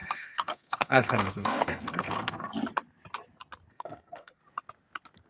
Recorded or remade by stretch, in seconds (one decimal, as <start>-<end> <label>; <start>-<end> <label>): 0.0-2.5 remade; 2.5-3.7 recorded; 3.7-4.4 remade; 4.4-5.3 recorded